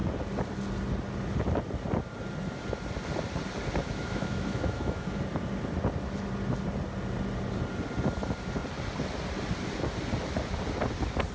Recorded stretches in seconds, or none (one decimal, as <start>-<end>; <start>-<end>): 0.0-3.8; 5.2-11.3